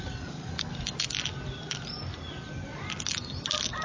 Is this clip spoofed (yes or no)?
no